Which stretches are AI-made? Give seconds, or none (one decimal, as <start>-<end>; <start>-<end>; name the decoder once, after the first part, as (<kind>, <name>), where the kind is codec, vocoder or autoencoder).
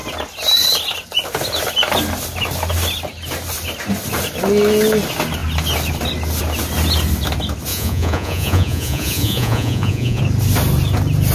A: 7.7-10.2 (vocoder, Vocos)